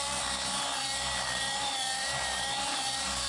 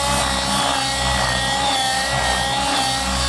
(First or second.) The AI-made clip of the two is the first